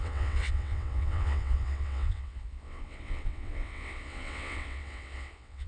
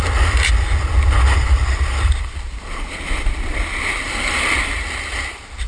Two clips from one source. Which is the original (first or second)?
second